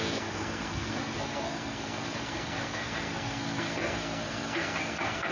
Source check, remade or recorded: remade